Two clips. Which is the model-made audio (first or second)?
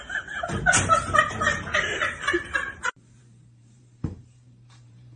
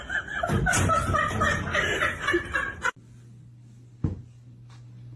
first